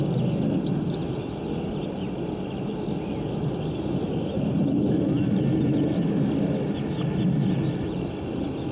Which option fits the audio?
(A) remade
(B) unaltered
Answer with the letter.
B